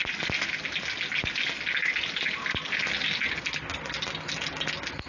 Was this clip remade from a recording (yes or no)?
no